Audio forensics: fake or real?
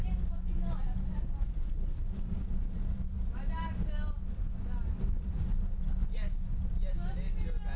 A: real